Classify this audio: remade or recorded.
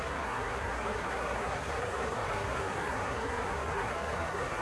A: remade